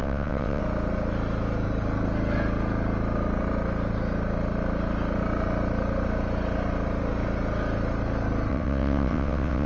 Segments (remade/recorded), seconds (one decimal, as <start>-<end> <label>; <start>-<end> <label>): 0.0-0.6 remade; 0.6-8.5 recorded; 8.5-9.7 remade